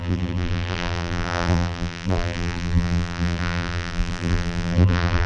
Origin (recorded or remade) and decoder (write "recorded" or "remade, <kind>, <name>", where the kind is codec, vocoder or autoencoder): remade, vocoder, BigVGAN v2